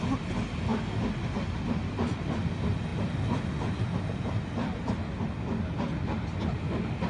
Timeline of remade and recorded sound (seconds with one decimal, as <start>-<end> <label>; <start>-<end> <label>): 0.0-7.1 recorded